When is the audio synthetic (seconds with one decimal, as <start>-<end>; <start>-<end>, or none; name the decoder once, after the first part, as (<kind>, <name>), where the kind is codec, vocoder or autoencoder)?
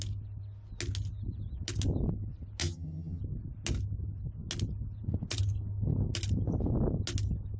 2.6-3.2 (vocoder, HiFi-GAN)